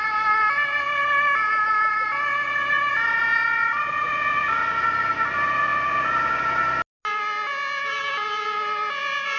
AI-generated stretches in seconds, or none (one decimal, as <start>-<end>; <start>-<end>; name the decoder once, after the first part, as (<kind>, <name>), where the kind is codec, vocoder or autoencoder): none